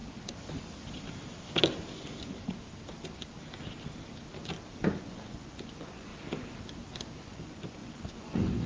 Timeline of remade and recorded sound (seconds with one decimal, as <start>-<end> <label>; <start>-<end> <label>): 0.0-5.0 recorded; 5.0-6.1 remade; 6.1-7.2 recorded; 7.2-8.7 remade